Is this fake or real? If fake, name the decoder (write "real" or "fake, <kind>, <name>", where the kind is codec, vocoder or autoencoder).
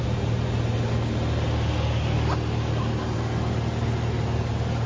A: real